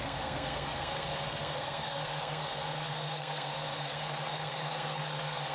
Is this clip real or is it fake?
fake